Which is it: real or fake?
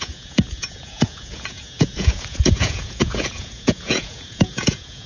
fake